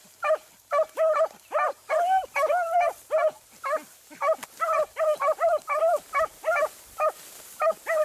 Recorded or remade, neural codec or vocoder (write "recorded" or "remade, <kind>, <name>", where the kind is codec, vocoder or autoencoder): recorded